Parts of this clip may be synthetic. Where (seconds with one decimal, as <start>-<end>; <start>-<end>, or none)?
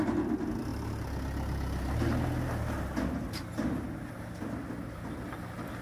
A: none